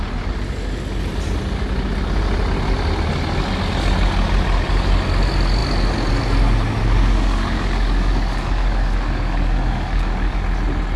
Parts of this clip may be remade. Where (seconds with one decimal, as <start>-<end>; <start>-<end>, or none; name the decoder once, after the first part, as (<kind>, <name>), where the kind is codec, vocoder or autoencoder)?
6.8-10.4 (codec, DAC)